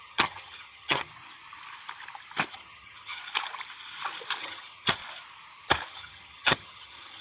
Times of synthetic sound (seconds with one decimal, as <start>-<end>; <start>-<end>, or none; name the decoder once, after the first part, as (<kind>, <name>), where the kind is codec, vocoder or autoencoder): 0.0-1.1 (vocoder, HiFi-GAN); 2.5-3.2; 4.4-5.0; 5.9-7.2